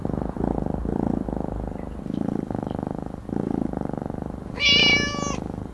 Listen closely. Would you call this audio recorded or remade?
recorded